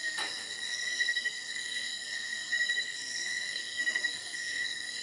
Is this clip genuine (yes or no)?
no